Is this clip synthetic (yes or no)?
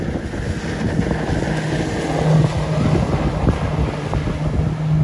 no